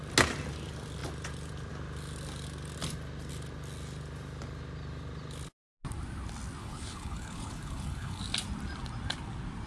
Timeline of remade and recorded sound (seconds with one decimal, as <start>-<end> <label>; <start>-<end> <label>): 0.0-6.6 recorded; 6.6-8.2 remade; 8.2-9.7 recorded